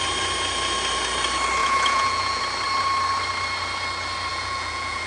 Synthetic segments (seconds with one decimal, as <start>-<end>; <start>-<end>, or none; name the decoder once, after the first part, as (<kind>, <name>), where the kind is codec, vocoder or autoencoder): 1.6-2.4 (vocoder, Vocos); 4.3-5.1